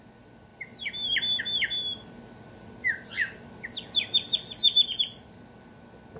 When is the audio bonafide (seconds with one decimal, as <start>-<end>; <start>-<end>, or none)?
0.0-6.2